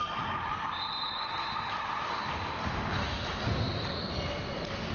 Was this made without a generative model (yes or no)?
yes